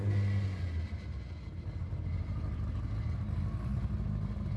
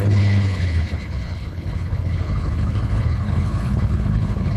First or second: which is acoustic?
first